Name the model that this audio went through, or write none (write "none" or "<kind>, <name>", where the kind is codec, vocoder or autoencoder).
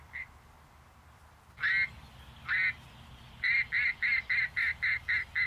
none